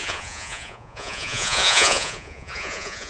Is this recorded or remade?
remade